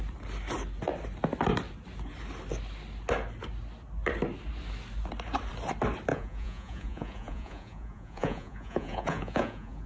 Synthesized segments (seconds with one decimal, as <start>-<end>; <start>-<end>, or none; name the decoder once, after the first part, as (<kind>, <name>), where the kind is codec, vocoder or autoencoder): 6.1-9.9 (vocoder, Vocos)